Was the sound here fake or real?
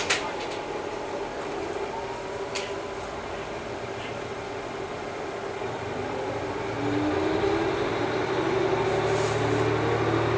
real